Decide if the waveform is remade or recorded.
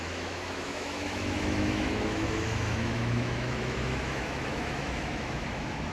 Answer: remade